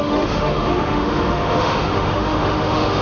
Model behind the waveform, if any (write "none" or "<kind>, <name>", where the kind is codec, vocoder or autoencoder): autoencoder, DAC-VAE